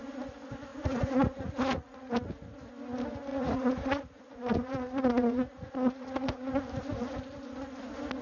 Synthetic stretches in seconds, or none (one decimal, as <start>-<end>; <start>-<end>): 0.7-2.1; 3.3-6.5